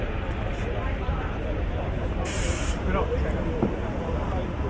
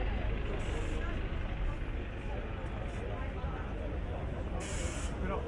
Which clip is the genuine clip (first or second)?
second